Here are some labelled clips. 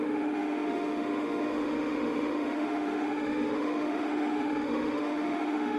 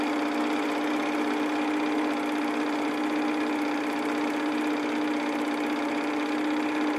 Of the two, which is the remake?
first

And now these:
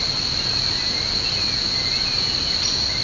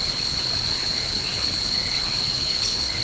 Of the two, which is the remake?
second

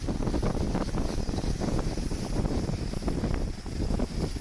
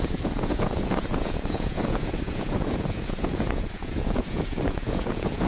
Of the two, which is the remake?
second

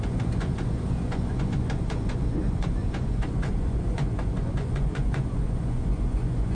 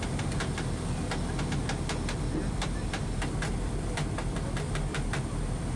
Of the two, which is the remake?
first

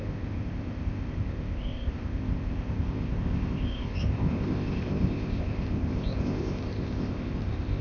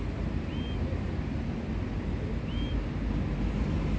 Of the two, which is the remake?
first